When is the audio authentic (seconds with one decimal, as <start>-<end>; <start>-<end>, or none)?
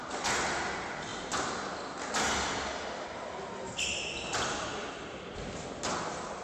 0.0-6.4